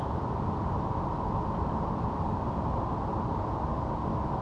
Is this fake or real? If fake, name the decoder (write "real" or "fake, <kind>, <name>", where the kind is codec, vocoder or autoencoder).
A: real